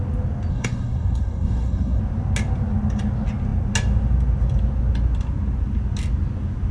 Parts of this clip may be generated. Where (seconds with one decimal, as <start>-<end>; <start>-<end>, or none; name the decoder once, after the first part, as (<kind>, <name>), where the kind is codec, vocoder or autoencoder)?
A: 0.5-2.0 (codec, SNAC)